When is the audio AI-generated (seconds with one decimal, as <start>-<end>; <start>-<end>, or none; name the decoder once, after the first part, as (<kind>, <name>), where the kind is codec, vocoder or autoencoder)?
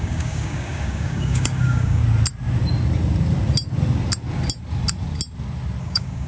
0.0-2.0 (codec, DAC); 5.8-6.3